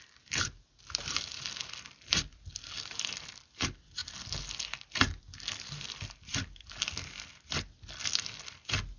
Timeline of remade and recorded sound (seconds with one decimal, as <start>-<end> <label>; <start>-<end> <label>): 0.0-9.0 recorded